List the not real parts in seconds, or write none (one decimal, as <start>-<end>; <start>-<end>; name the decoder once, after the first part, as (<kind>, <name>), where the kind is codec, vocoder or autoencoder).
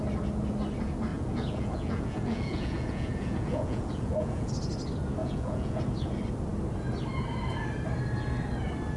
1.1-4.5 (vocoder, Vocos); 5.2-5.8